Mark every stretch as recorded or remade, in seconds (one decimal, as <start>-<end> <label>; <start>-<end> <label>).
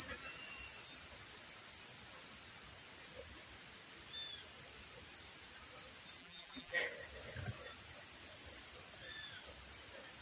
0.0-6.2 recorded; 6.2-6.8 remade; 6.8-10.2 recorded